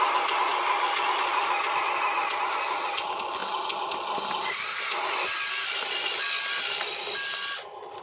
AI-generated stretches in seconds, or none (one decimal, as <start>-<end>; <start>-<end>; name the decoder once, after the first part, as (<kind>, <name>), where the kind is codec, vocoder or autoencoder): none